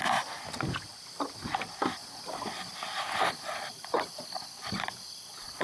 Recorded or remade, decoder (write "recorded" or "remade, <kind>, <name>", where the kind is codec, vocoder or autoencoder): recorded